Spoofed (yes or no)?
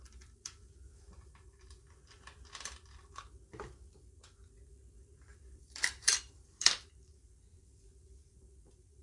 yes